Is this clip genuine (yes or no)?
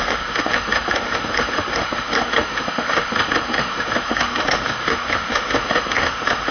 no